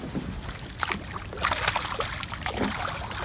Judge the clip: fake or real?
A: real